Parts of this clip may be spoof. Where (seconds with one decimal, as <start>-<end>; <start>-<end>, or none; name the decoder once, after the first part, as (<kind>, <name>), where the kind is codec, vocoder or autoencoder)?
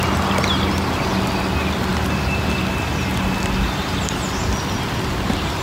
none